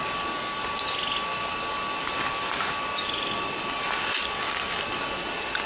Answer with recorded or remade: recorded